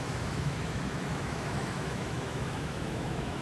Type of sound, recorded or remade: remade